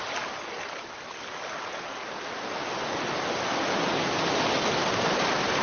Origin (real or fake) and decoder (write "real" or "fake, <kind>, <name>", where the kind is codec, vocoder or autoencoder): real